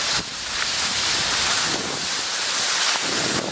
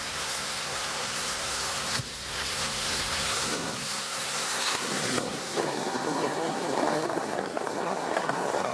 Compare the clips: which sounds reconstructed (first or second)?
second